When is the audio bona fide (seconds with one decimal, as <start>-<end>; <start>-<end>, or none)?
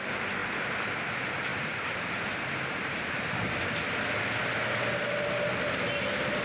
0.0-1.5; 4.0-6.4